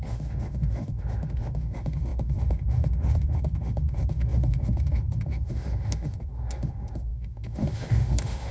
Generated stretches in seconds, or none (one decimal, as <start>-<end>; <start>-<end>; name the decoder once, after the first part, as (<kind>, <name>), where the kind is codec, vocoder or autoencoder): 0.0-8.5 (autoencoder, DAC-VAE)